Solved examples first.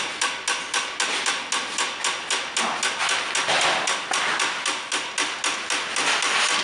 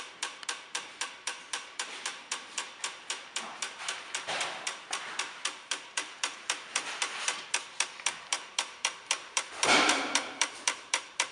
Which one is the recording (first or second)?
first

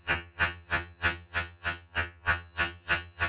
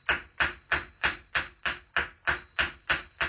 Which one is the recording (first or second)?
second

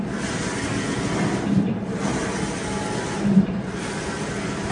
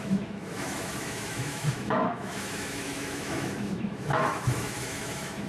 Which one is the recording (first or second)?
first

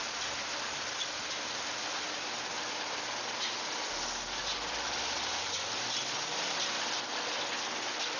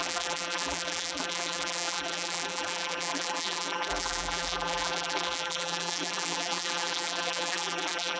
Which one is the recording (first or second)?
first